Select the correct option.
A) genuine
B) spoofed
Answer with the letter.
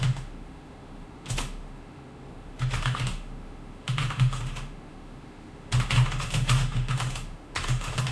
B